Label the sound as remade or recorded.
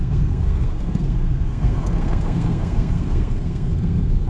remade